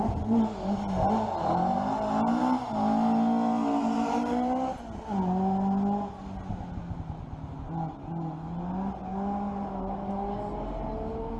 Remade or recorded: recorded